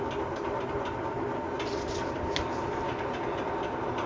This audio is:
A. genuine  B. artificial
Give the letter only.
A